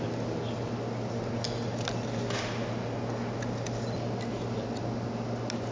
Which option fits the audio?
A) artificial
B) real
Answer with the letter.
B